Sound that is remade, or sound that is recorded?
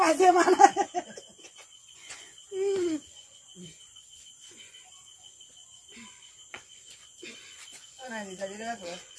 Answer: remade